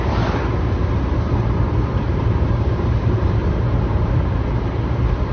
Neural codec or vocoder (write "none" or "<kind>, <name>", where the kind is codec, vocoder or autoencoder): vocoder, BigVGAN v2